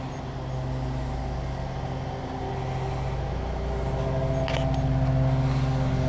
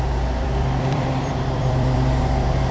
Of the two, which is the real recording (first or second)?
first